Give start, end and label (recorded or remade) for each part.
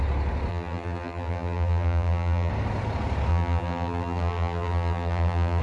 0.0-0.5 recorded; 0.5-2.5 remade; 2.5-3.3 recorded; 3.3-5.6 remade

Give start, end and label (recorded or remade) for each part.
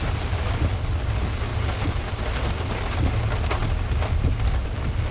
0.0-5.1 recorded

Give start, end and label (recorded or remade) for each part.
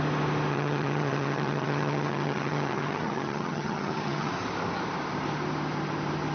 0.0-0.5 recorded; 0.5-4.3 remade; 4.3-6.3 recorded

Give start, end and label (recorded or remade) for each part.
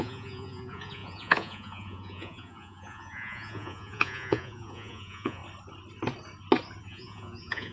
0.0-5.4 remade; 5.4-6.8 recorded; 6.8-7.7 remade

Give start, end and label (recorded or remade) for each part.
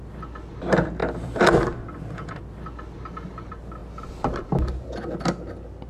0.0-1.0 recorded; 1.0-2.4 remade; 2.4-5.9 recorded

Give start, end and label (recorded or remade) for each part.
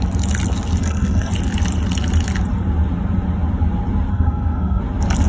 0.0-0.8 recorded; 0.8-1.3 remade; 1.3-4.1 recorded; 4.1-4.8 remade; 4.8-5.3 recorded